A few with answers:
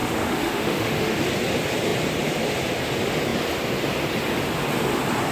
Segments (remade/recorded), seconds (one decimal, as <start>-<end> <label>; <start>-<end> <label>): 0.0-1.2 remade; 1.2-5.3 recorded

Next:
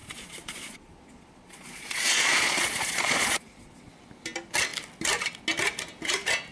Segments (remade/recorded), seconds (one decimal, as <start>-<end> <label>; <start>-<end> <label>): 0.0-3.9 remade; 3.9-6.5 recorded

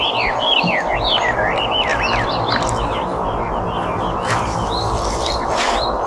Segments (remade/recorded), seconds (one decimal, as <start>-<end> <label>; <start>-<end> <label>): 0.0-6.1 recorded

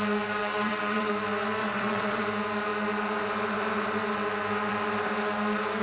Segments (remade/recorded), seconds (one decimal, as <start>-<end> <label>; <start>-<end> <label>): 0.0-0.4 recorded; 0.4-1.1 remade; 1.1-1.6 recorded; 1.6-2.2 remade; 2.2-5.8 recorded

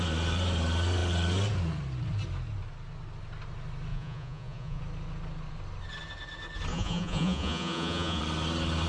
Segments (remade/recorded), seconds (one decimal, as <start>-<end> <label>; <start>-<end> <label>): 0.0-3.9 recorded; 3.9-4.8 remade; 4.8-6.7 recorded; 6.7-8.2 remade; 8.2-8.9 recorded